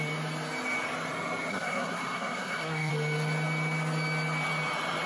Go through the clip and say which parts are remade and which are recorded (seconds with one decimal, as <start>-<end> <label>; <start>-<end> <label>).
0.0-1.5 recorded; 1.5-2.9 remade; 2.9-5.1 recorded